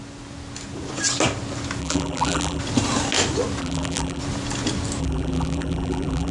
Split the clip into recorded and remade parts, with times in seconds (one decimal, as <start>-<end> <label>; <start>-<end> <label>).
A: 0.0-1.8 recorded; 1.8-2.6 remade; 2.6-3.6 recorded; 3.6-4.2 remade; 4.2-5.0 recorded; 5.0-6.3 remade